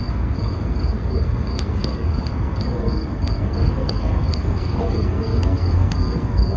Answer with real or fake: fake